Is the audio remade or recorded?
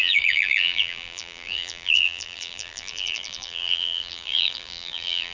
remade